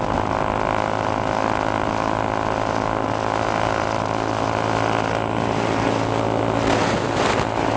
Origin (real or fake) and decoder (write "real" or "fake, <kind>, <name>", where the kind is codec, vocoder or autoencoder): real